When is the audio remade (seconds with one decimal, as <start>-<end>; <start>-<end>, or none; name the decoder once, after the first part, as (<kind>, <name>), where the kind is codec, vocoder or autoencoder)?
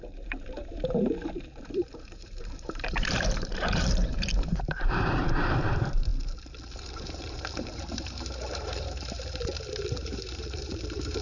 0.0-6.1 (vocoder, BigVGAN v2); 6.7-11.2